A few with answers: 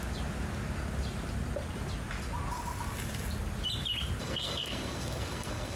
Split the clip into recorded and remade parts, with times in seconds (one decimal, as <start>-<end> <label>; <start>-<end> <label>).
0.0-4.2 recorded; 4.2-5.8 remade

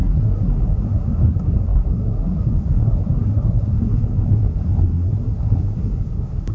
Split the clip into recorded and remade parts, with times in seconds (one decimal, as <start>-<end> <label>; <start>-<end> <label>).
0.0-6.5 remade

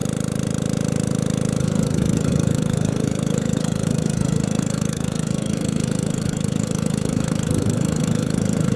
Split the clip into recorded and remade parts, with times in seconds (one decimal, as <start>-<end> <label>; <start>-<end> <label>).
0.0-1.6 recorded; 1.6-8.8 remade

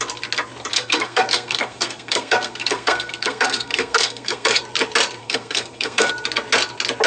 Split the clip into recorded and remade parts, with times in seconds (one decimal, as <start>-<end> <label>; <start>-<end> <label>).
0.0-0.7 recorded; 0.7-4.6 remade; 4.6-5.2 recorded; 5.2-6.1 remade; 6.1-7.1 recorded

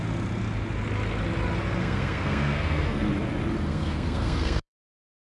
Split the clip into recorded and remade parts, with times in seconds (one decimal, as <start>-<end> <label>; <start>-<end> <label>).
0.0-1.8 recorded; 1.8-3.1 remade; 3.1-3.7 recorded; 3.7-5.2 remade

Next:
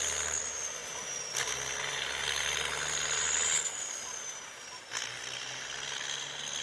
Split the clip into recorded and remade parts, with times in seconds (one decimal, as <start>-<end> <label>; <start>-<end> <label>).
0.0-6.6 recorded

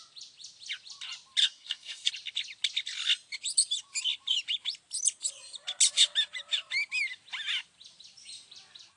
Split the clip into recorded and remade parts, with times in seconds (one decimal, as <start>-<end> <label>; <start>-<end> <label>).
0.0-1.4 recorded; 1.4-2.1 remade; 2.1-9.0 recorded

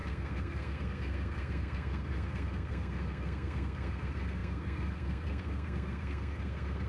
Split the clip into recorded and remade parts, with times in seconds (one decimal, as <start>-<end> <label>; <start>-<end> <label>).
0.0-6.9 remade